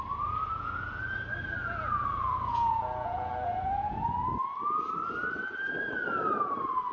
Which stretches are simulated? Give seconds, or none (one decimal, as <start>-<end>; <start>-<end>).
0.5-1.0; 1.6-4.3